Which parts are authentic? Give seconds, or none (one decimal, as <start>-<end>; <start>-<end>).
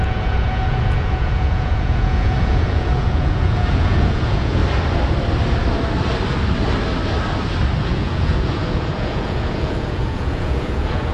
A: 4.6-7.9